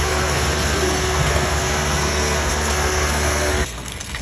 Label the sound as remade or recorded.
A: remade